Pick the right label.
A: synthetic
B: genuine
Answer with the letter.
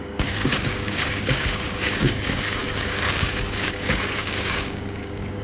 A